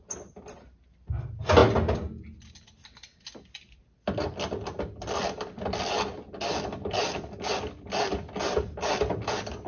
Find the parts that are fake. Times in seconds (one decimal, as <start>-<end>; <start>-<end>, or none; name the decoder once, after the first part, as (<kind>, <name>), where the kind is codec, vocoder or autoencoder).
none